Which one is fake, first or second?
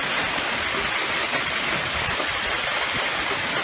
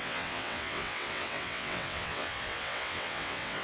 second